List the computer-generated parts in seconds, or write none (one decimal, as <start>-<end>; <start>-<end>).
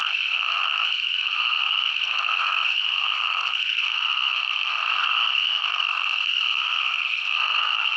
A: 0.0-8.0